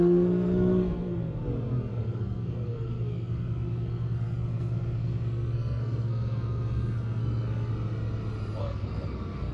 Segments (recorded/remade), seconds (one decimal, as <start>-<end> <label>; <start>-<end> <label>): 0.0-1.4 remade; 1.4-1.9 recorded; 1.9-7.7 remade; 7.7-8.6 recorded; 8.6-9.5 remade